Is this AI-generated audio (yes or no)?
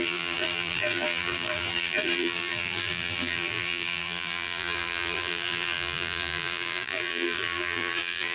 yes